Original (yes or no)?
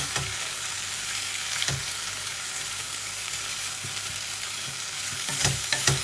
no